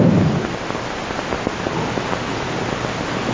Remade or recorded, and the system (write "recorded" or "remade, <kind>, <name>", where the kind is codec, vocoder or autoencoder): recorded